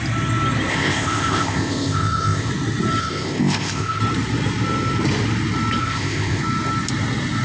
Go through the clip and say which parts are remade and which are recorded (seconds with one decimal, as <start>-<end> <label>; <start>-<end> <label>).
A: 0.0-0.7 recorded; 0.7-2.5 remade; 2.5-3.0 recorded; 3.0-4.0 remade; 4.0-5.8 recorded; 5.8-6.4 remade; 6.4-7.4 recorded